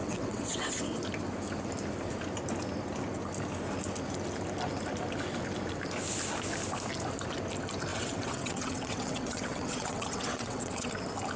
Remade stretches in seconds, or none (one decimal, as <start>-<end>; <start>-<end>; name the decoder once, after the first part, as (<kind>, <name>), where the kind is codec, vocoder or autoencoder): 0.0-1.0 (vocoder, WaveNeXt); 7.9-10.9